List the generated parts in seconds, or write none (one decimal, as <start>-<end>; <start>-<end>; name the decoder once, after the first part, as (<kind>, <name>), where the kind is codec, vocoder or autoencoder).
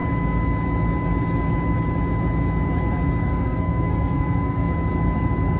3.2-4.7 (codec, SNAC)